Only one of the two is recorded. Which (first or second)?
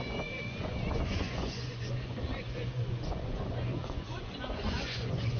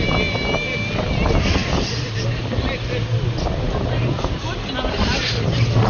second